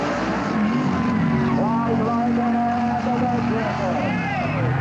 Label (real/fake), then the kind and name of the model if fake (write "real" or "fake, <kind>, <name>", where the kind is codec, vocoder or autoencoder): real